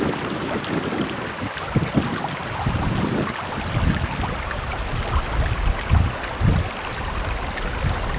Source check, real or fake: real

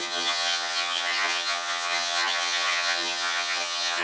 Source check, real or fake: fake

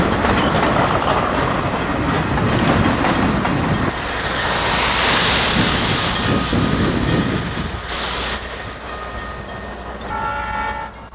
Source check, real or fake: real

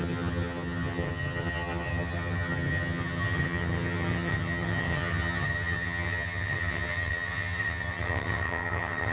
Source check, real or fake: fake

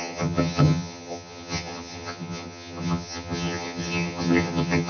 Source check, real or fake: fake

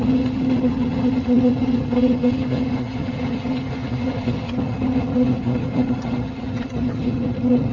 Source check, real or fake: fake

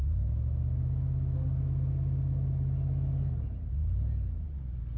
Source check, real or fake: real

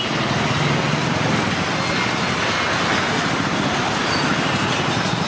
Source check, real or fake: real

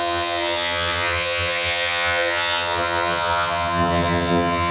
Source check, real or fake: fake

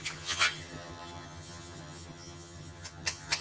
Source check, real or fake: fake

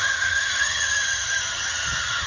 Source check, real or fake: fake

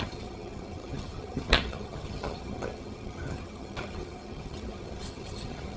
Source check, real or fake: fake